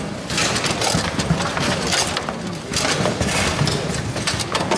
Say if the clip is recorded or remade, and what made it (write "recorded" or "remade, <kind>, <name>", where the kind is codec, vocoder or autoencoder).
recorded